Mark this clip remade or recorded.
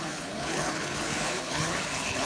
remade